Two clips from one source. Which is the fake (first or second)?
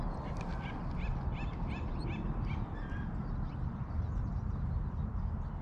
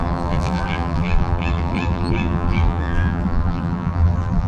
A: second